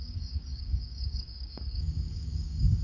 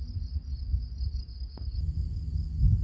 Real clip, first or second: second